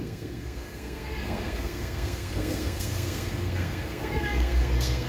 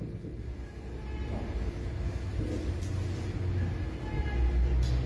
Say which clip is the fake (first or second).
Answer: first